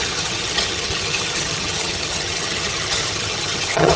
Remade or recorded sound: remade